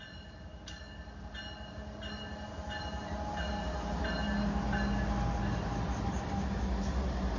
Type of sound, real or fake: real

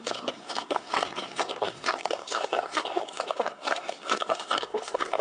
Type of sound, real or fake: fake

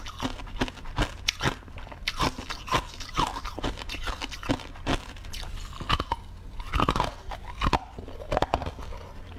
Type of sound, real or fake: real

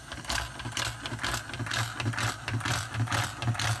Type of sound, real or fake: real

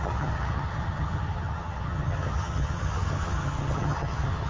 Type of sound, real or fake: fake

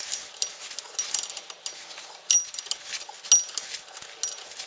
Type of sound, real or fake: real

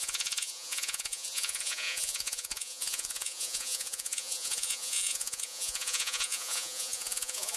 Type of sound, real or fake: fake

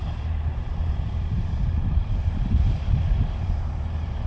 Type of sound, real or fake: fake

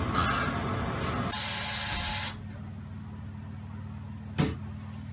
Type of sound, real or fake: real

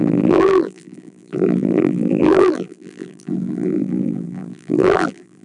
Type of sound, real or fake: fake